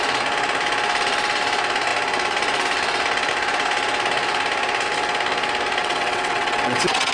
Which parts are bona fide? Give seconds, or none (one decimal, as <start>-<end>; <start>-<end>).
0.0-5.8